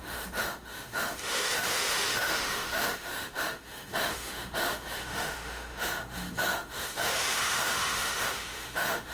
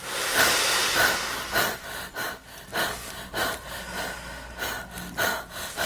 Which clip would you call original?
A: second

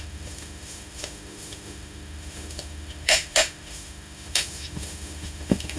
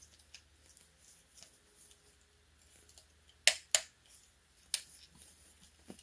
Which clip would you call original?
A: second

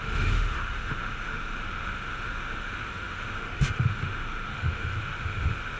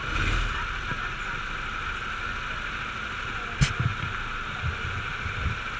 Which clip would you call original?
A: second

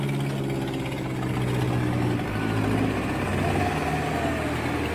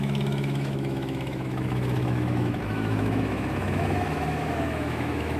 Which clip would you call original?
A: first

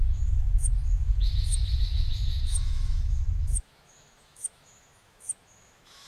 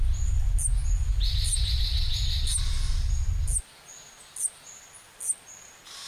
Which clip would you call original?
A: second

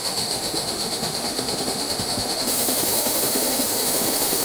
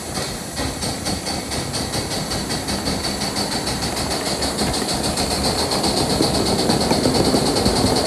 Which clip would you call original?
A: second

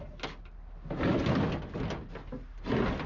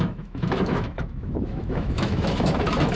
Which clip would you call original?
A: first